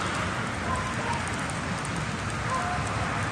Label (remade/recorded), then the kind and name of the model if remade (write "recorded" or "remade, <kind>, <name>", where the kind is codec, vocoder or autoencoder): recorded